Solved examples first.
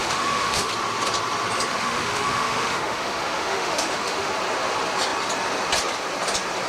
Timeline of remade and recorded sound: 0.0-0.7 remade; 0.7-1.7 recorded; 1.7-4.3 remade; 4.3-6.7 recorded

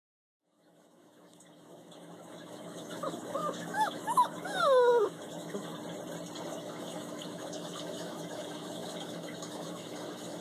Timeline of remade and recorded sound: 0.0-5.7 remade; 5.7-6.5 recorded; 6.5-10.4 remade

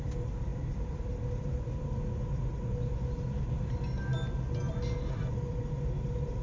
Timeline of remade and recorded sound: 0.0-6.4 recorded

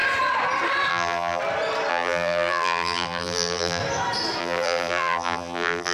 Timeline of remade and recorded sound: 0.0-0.9 recorded; 0.9-1.4 remade; 1.4-1.9 recorded; 1.9-3.8 remade; 3.8-4.4 recorded; 4.4-5.9 remade

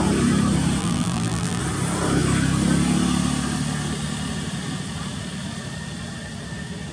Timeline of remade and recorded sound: 0.0-0.8 recorded; 0.8-1.6 remade; 1.6-6.9 recorded

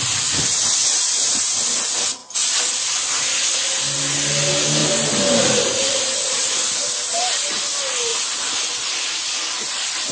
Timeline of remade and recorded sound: 0.0-0.8 recorded; 0.8-1.3 remade; 1.3-10.1 recorded

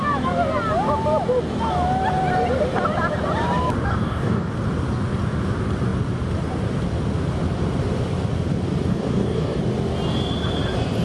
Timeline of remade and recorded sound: 0.0-3.9 recorded; 3.9-4.5 remade; 4.5-8.9 recorded; 8.9-9.6 remade; 9.6-11.0 recorded